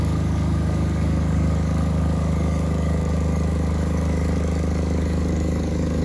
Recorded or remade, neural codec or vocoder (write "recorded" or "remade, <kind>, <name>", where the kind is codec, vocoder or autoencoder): remade, codec, DAC